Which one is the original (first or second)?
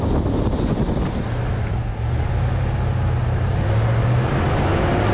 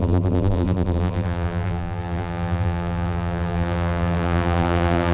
first